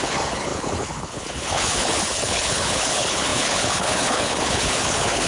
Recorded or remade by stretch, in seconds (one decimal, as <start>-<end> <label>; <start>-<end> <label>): 0.0-5.3 remade